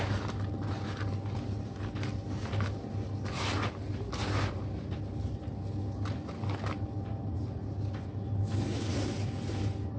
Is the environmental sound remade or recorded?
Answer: recorded